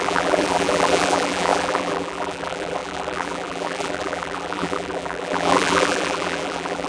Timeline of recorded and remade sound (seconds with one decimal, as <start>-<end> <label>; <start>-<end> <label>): 0.0-6.9 remade